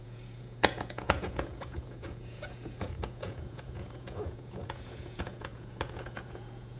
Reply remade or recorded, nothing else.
remade